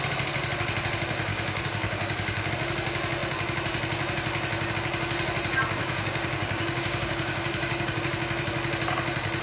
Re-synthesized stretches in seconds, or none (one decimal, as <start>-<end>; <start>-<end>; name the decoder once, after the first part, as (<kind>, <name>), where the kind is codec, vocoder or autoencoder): 1.3-2.5 (codec, DAC); 5.8-8.0